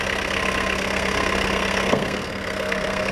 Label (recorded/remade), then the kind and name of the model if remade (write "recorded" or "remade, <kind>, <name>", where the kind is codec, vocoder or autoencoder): remade, codec, SNAC